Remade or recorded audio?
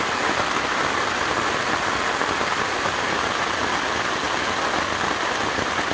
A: recorded